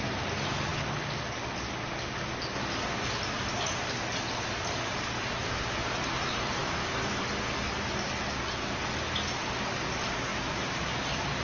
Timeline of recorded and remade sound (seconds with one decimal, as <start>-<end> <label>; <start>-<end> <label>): 0.0-6.6 recorded; 6.6-7.2 remade; 7.2-10.3 recorded; 10.3-10.9 remade; 10.9-11.4 recorded